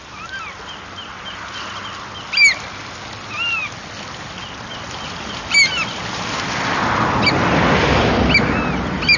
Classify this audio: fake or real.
real